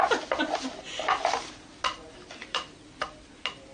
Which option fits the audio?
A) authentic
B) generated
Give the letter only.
A